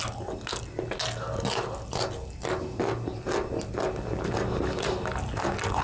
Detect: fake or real real